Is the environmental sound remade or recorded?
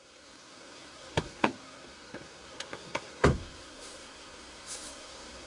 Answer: remade